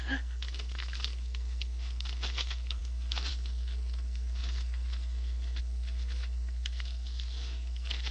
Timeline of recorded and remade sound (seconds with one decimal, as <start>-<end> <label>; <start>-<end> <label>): 0.0-8.1 remade